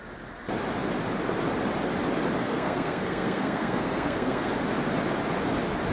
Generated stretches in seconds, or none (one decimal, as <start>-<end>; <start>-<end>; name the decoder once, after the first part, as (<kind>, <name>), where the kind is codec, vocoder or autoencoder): 2.4-4.5 (codec, SNAC)